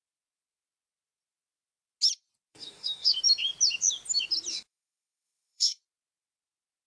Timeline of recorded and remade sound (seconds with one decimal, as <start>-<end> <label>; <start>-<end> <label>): 0.0-2.5 recorded; 2.5-3.2 remade; 3.2-4.5 recorded; 4.5-5.8 remade; 5.8-6.9 recorded